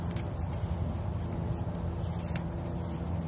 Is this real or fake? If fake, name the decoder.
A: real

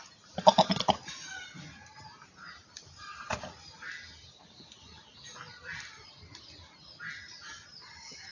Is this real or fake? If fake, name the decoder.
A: real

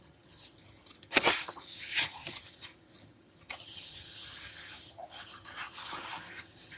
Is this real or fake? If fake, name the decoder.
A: fake, vocoder, HiFi-GAN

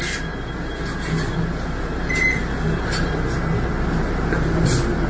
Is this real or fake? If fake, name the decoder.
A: real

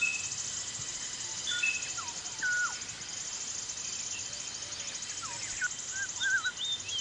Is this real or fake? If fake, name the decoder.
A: real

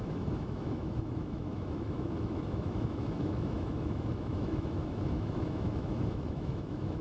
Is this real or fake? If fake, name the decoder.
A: fake, autoencoder, DAC-VAE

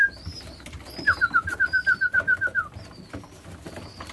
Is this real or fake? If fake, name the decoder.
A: fake, vocoder, BigVGAN v2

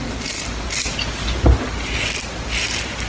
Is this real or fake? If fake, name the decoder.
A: real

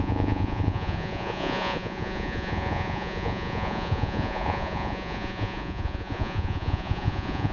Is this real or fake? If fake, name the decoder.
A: fake, vocoder, Vocos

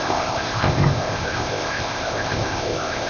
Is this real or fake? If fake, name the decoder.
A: fake, codec, ZipCodec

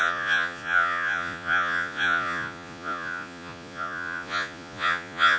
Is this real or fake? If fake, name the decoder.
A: fake, vocoder, Vocos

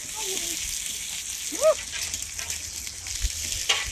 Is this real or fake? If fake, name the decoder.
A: real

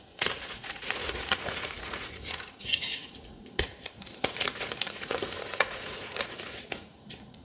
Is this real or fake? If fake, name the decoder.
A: fake, vocoder, Vocos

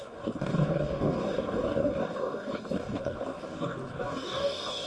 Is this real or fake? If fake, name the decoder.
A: fake, codec, DAC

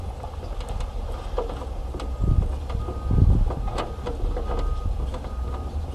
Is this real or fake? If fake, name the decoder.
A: real